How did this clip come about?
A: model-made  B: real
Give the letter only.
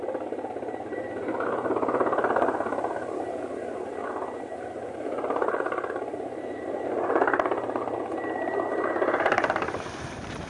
A